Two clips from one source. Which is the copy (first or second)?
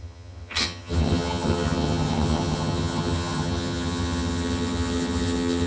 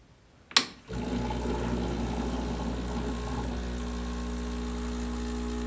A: first